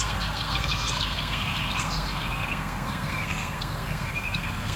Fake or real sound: fake